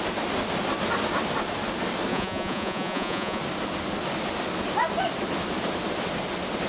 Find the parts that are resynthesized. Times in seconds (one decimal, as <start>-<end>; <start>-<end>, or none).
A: 2.1-3.4